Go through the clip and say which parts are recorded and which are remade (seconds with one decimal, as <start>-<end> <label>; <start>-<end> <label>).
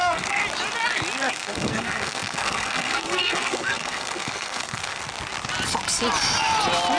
0.0-0.4 remade; 0.4-1.3 recorded; 1.3-5.0 remade; 5.0-7.0 recorded